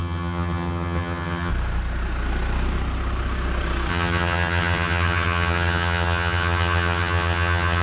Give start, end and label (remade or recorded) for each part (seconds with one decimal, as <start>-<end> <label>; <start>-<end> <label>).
0.0-1.5 remade; 1.5-3.9 recorded; 3.9-7.8 remade